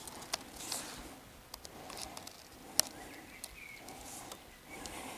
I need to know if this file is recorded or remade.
recorded